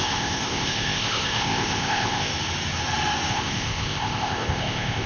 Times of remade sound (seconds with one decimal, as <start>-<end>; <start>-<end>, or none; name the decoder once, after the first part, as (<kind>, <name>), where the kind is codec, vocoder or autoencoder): 0.0-2.3 (codec, ZipCodec); 3.3-5.1